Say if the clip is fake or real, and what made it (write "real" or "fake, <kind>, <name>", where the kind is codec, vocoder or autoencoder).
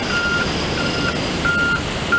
real